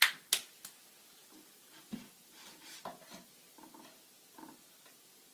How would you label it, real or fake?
real